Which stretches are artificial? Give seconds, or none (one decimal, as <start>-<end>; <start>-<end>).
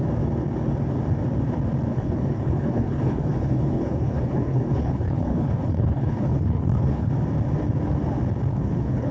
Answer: 1.9-7.1; 8.5-9.1